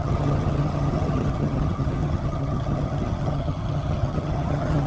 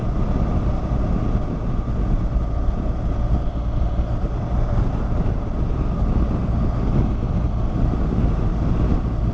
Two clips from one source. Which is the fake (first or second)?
first